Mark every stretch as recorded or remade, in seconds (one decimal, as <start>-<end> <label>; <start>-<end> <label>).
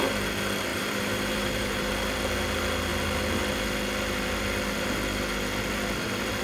0.0-0.7 recorded; 0.7-1.9 remade; 1.9-6.4 recorded